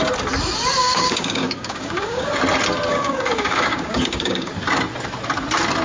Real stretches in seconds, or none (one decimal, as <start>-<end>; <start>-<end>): 0.0-0.8; 2.4-2.9; 4.5-5.8